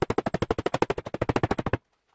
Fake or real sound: real